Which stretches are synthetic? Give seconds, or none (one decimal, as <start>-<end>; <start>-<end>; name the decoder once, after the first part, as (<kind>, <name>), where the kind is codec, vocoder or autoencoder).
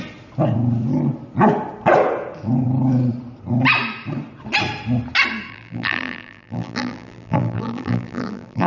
5.5-8.7 (vocoder, BigVGAN v2)